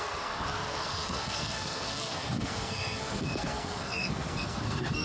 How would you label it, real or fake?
fake